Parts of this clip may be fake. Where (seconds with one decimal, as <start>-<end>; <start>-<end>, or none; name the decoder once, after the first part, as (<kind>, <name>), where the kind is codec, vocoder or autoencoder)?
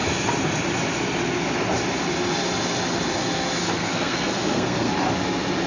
3.6-4.9 (codec, SNAC)